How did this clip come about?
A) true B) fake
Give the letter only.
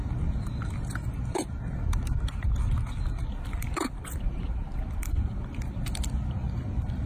B